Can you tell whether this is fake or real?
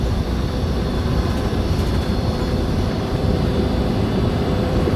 fake